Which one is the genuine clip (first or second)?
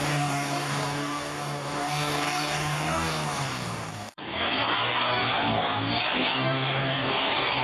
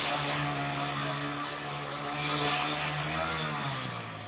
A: second